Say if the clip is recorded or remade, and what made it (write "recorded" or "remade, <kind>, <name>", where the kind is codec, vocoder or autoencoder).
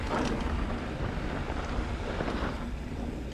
recorded